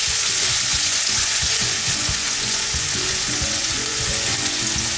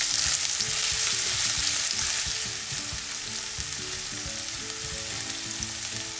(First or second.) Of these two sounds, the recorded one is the second